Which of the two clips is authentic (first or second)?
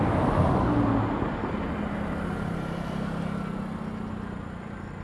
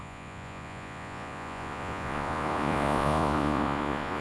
first